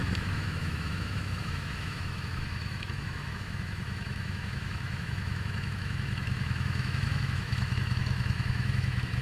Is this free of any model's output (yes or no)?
no